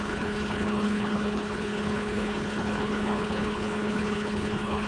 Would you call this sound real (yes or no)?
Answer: no